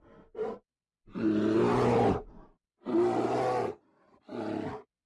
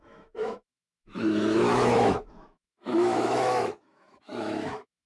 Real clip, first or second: first